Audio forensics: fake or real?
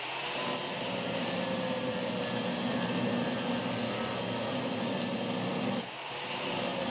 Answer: real